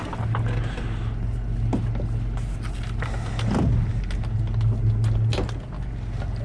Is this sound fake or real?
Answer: real